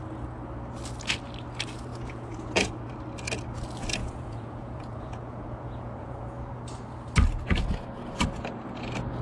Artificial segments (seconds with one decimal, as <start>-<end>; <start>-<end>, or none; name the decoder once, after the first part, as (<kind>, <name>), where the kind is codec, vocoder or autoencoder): 1.9-2.9 (vocoder, Vocos); 4.0-6.5